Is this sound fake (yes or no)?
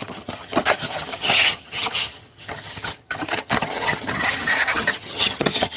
yes